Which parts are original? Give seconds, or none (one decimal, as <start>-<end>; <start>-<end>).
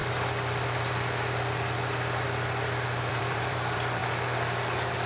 0.0-3.1; 4.0-5.1